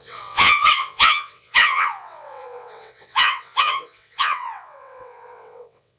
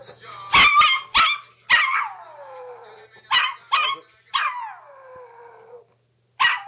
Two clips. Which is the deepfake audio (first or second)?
first